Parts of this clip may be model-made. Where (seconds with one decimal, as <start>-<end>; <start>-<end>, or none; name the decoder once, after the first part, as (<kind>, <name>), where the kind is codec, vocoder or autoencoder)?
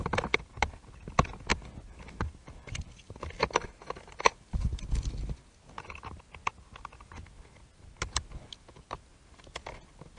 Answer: 1.5-3.7 (vocoder, BigVGAN v2)